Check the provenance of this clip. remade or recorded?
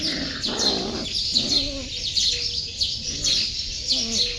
recorded